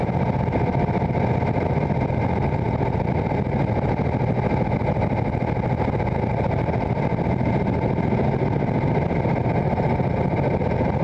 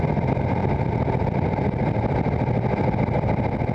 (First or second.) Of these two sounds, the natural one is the first